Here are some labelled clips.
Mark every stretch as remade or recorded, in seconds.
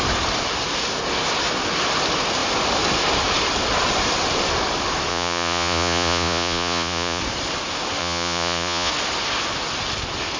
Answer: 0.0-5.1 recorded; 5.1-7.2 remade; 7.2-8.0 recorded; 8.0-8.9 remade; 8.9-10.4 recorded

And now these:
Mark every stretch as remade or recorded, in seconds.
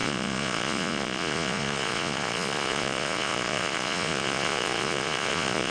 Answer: 0.0-5.7 remade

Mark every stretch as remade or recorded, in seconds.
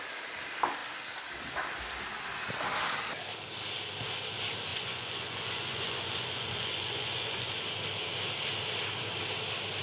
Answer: 0.0-4.7 recorded; 4.7-7.5 remade; 7.5-9.8 recorded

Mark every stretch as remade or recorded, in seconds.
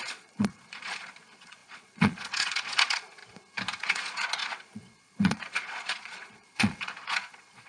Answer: 0.0-3.2 remade; 3.2-3.8 recorded; 3.8-7.7 remade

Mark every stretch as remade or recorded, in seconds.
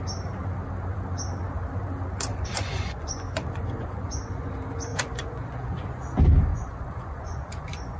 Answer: 0.0-2.3 recorded; 2.3-4.5 remade; 4.5-4.9 recorded; 4.9-6.0 remade; 6.0-6.5 recorded; 6.5-8.0 remade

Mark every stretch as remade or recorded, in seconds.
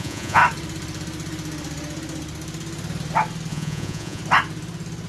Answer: 0.0-0.4 remade; 0.4-3.5 recorded; 3.5-4.2 remade; 4.2-5.1 recorded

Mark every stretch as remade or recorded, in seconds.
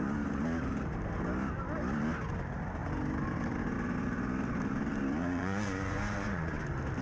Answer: 0.0-5.2 recorded; 5.2-6.6 remade; 6.6-7.0 recorded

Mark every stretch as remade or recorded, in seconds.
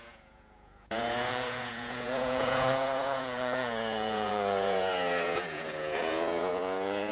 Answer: 0.0-7.1 remade